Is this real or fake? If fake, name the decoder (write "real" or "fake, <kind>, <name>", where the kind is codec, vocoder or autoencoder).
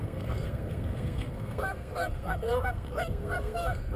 fake, codec, SNAC